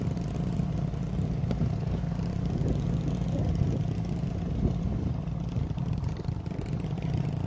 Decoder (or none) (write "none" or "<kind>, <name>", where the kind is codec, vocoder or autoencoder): none